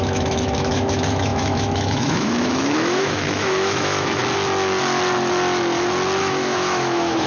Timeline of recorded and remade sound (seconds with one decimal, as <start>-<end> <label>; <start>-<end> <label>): 0.0-4.2 remade; 4.2-6.2 recorded; 6.2-7.3 remade